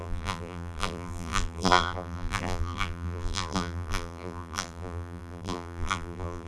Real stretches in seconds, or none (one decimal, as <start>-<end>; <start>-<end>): none